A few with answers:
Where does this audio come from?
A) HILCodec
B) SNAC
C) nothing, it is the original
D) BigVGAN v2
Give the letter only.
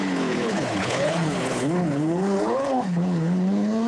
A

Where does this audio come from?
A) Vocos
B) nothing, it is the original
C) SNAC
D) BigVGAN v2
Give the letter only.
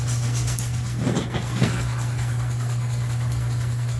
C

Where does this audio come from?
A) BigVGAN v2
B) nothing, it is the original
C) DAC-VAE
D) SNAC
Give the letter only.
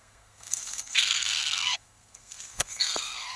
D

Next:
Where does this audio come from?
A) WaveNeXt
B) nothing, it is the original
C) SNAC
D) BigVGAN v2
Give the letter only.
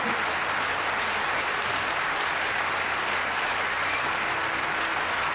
B